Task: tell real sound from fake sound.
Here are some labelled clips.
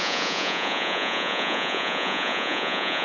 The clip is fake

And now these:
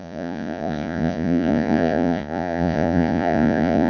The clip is fake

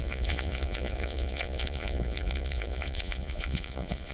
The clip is fake